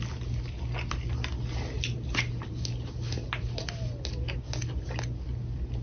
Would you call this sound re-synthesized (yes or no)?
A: no